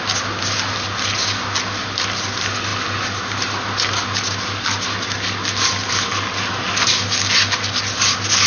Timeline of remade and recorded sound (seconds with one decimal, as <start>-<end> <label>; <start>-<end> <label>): 0.0-8.5 recorded